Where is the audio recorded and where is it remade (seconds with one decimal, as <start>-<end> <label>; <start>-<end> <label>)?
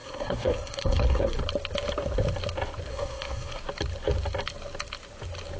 0.0-1.4 remade; 1.4-2.9 recorded; 2.9-3.6 remade; 3.6-5.6 recorded